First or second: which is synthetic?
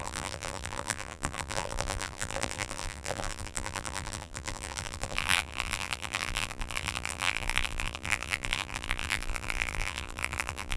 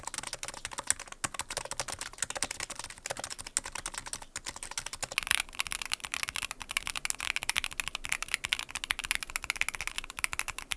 first